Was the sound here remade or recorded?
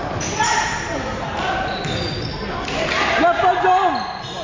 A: recorded